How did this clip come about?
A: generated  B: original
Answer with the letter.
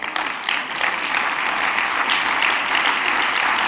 B